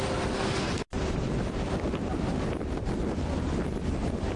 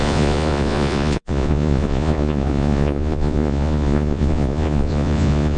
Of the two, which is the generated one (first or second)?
second